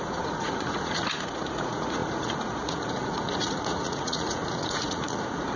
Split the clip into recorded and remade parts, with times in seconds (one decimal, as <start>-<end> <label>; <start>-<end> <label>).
0.0-5.6 remade

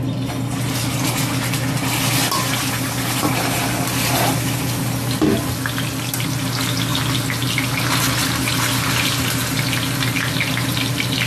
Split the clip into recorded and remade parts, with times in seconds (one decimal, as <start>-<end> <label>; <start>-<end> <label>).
0.0-11.3 recorded